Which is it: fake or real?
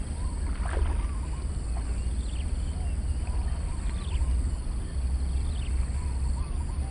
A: real